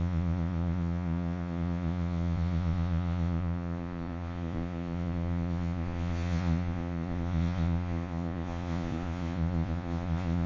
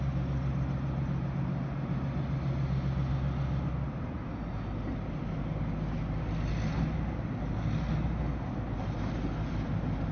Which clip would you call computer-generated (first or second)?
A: first